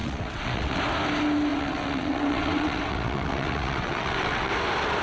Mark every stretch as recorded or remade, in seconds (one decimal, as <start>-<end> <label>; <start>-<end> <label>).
0.0-0.8 remade; 0.8-1.5 recorded; 1.5-4.5 remade; 4.5-5.0 recorded